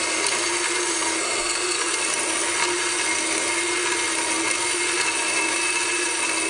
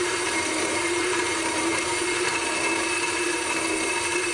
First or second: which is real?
first